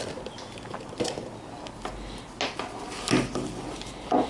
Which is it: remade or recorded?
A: recorded